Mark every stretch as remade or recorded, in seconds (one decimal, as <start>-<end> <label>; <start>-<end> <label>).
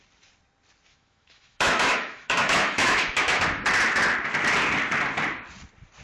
0.0-0.9 recorded; 0.9-3.4 remade; 3.4-6.0 recorded